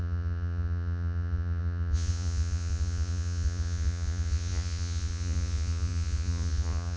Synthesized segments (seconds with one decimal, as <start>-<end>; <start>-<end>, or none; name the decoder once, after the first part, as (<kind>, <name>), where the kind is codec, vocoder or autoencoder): 0.0-7.0 (vocoder, Vocos)